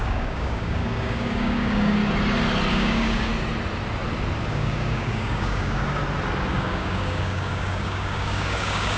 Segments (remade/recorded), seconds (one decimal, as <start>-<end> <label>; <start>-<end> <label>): 0.0-2.0 remade; 2.0-2.7 recorded; 2.7-3.3 remade; 3.3-4.5 recorded; 4.5-6.0 remade; 6.0-6.5 recorded; 6.5-9.0 remade